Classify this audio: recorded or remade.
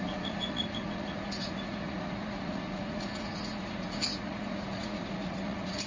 remade